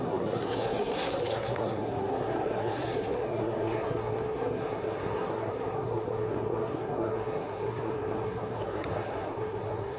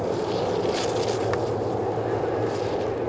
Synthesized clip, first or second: first